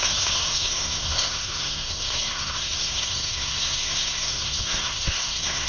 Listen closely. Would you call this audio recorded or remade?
remade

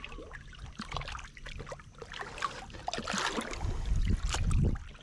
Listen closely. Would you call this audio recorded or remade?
recorded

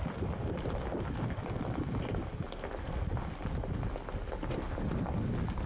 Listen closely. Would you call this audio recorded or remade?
recorded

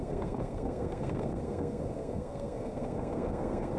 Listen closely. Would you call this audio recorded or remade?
remade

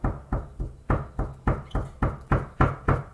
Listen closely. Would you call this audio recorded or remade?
recorded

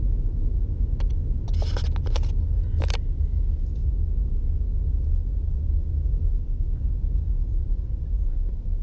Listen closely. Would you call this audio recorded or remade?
recorded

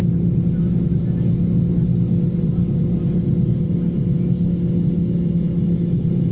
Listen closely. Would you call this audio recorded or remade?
recorded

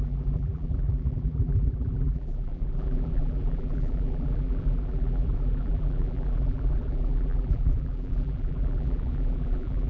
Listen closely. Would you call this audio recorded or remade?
remade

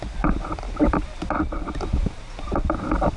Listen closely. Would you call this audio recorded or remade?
remade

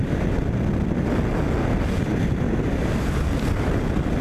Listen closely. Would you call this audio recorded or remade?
recorded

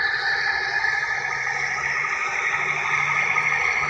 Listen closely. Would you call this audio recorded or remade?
recorded